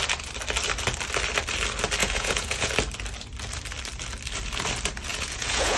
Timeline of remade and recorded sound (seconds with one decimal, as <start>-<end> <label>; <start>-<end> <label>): 0.0-2.0 recorded; 2.0-2.7 remade; 2.7-5.1 recorded; 5.1-5.8 remade